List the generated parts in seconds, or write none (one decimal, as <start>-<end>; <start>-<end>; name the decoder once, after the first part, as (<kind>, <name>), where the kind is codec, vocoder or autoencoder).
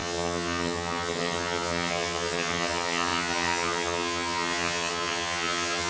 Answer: 0.0-5.9 (vocoder, HiFi-GAN)